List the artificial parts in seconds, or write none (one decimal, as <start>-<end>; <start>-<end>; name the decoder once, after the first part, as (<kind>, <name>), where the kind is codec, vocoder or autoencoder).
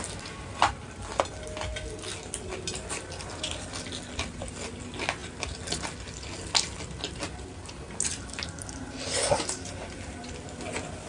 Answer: none